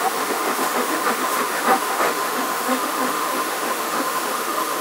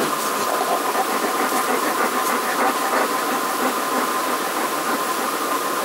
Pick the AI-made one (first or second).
first